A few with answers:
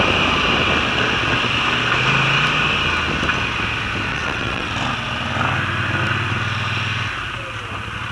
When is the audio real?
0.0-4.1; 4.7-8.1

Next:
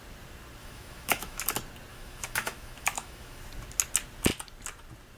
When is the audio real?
0.0-0.6; 1.4-1.9; 3.4-5.2

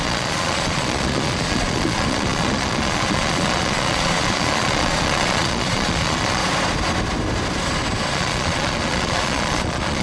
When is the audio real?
6.4-8.1

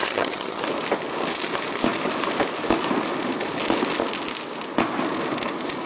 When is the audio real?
0.6-5.9

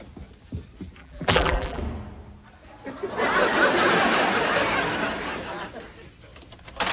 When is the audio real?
0.0-1.0; 1.8-6.9

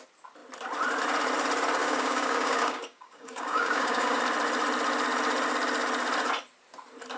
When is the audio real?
0.0-1.8; 4.2-7.2